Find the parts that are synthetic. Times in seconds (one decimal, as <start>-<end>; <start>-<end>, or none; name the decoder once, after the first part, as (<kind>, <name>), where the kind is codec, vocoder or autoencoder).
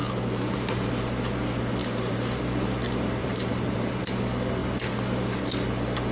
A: 0.0-1.0 (vocoder, BigVGAN v2); 1.8-2.5; 3.2-4.0